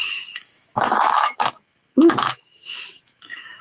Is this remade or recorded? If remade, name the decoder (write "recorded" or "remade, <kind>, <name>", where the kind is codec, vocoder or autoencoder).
remade, autoencoder, DAC-VAE